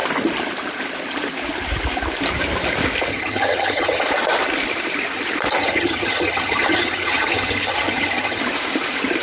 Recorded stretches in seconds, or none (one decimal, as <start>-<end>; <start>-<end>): 0.0-3.1; 4.0-5.6; 8.4-9.2